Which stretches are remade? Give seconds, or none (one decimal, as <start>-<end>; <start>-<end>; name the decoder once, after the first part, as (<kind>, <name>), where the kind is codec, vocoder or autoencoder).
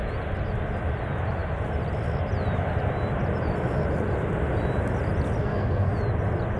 5.4-5.9 (codec, SNAC)